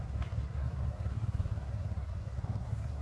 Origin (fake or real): fake